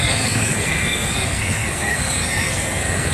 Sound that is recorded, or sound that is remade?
remade